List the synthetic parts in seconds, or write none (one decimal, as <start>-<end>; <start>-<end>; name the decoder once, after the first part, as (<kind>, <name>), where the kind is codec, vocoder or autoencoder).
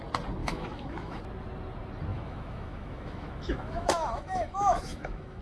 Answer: 0.4-1.2 (autoencoder, DAC-VAE); 2.1-5.4